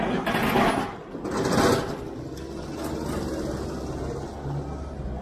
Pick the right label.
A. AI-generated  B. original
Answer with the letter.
B